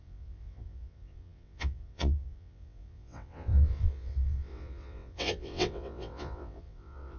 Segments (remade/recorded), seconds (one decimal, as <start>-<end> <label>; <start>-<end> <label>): 0.0-7.2 remade